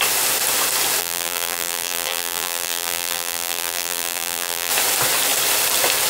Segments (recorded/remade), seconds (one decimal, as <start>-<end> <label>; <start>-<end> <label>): 0.0-1.0 recorded; 1.0-4.7 remade; 4.7-6.1 recorded